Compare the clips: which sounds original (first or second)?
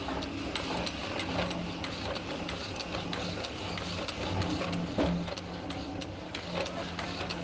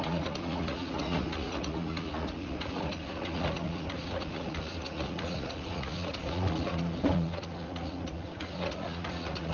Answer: first